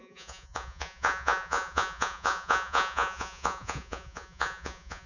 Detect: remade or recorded remade